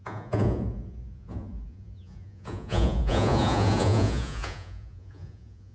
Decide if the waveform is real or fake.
fake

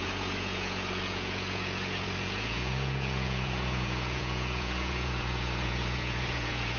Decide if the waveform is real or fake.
fake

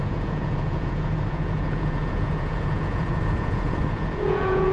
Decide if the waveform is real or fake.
fake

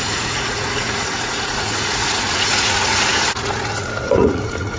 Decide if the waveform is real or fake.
fake